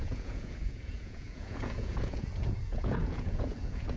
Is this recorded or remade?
remade